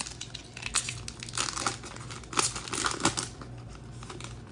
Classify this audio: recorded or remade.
recorded